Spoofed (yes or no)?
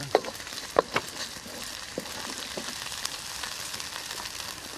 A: yes